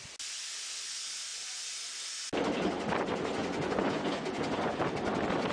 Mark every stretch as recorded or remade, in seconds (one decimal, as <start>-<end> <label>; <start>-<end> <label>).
0.0-3.4 recorded; 3.4-4.8 remade; 4.8-5.5 recorded